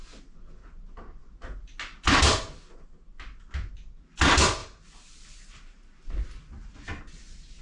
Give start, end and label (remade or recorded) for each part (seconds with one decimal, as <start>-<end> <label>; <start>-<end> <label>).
0.0-7.6 recorded